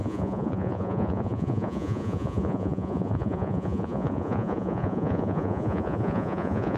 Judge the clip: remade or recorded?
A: remade